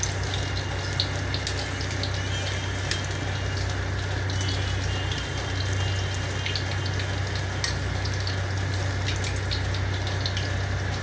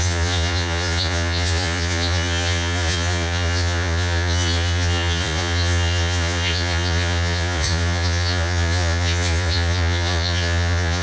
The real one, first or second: first